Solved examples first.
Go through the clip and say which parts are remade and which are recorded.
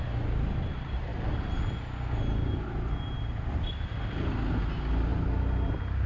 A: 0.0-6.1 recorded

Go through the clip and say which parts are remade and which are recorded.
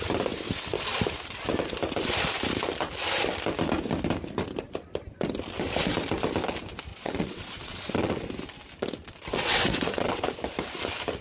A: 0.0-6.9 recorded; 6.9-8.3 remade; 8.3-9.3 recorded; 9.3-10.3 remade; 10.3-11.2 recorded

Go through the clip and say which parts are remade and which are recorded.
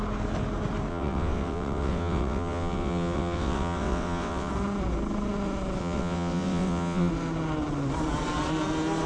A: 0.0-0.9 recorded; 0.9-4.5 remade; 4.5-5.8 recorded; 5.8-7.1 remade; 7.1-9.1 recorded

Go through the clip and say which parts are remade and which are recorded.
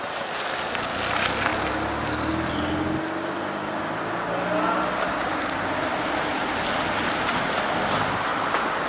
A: 0.0-8.9 recorded